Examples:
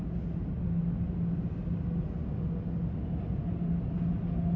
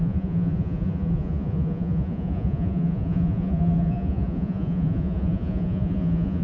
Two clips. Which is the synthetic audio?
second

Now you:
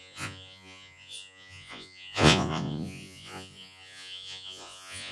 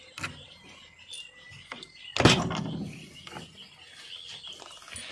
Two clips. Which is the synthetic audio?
first